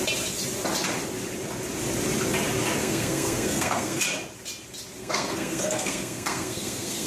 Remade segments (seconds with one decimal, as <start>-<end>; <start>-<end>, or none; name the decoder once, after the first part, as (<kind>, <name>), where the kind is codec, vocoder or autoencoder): 2.8-4.0 (codec, SNAC); 5.0-7.1